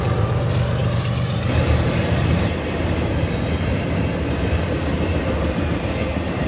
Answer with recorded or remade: remade